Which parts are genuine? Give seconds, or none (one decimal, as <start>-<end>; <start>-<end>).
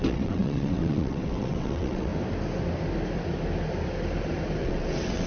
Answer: 2.1-4.6